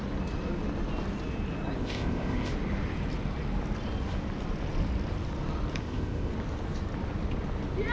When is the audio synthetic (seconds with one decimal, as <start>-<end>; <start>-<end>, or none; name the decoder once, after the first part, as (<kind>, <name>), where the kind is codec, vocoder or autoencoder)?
1.8-2.5 (codec, ZipCodec); 5.8-6.3